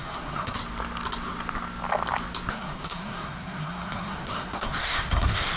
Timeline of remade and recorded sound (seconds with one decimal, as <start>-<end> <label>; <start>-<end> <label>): 0.0-0.6 remade; 0.6-2.5 recorded; 2.5-5.6 remade